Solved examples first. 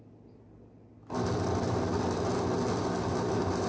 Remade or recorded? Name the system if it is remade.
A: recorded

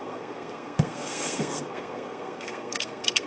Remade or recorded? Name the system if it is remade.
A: remade, codec, SNAC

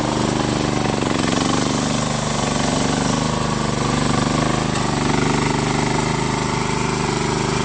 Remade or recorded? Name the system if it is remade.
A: recorded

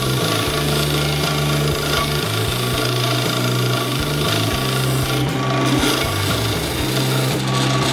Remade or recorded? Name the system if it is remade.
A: recorded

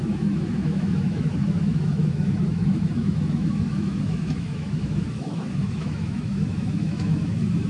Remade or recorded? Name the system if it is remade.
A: remade, autoencoder, DAC-VAE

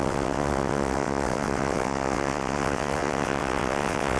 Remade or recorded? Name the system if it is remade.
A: remade, vocoder, WaveNeXt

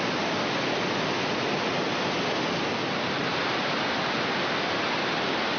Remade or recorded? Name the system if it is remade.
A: recorded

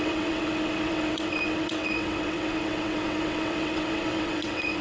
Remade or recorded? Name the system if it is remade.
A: remade, vocoder, WaveNeXt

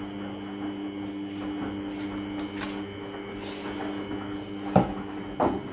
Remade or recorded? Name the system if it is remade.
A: recorded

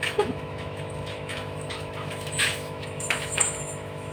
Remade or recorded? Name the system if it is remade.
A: remade, autoencoder, DAC-VAE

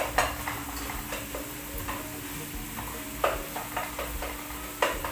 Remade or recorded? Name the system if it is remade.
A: recorded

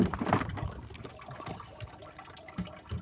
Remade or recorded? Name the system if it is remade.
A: recorded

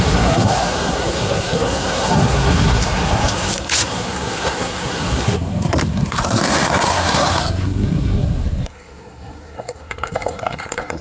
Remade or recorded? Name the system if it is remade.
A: remade, codec, SNAC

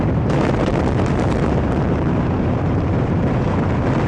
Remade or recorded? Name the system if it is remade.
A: remade, vocoder, BigVGAN v2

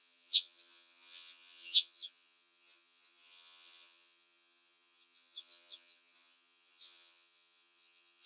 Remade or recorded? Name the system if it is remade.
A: remade, vocoder, HiFi-GAN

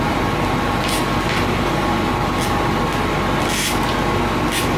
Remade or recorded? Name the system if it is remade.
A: recorded